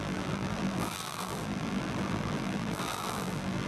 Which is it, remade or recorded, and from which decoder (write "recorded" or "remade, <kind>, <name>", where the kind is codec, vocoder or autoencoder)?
remade, vocoder, BigVGAN v2